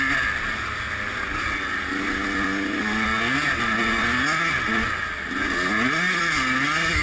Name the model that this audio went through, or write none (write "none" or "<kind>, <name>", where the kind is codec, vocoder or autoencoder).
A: none